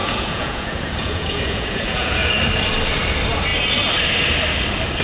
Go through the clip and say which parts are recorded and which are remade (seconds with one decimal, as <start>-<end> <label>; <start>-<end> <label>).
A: 0.0-2.4 remade; 2.4-5.0 recorded